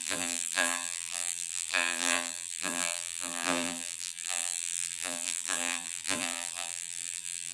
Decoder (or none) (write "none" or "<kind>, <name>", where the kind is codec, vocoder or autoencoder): vocoder, BigVGAN v2